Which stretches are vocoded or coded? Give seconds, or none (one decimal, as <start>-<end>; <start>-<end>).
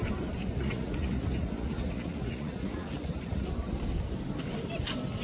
0.4-3.5